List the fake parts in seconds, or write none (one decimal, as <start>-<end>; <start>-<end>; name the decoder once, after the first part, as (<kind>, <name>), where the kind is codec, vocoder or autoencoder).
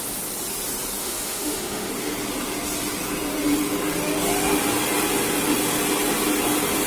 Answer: 1.0-1.9 (autoencoder, DAC-VAE)